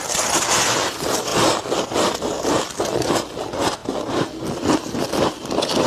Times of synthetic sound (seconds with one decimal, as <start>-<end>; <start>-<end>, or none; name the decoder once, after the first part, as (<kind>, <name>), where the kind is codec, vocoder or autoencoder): none